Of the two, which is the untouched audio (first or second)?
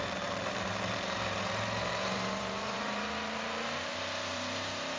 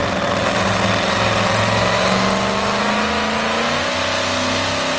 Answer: second